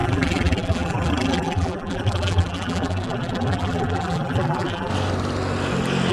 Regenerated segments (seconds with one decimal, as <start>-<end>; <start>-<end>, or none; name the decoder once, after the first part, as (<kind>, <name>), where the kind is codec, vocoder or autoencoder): 0.0-4.9 (vocoder, BigVGAN v2)